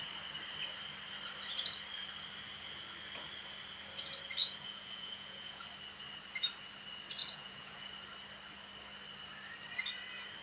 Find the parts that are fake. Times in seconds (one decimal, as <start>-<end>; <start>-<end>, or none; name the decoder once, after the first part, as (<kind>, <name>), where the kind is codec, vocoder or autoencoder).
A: 4.4-5.7 (vocoder, Vocos); 7.2-7.9